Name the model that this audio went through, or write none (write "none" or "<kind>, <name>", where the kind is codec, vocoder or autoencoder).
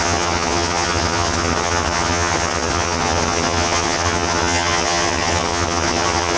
vocoder, HiFi-GAN